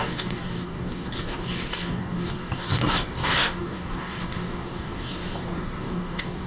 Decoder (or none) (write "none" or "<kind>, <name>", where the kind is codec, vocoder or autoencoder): codec, DAC